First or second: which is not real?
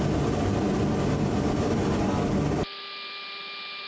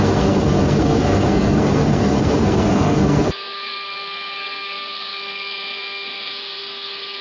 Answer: second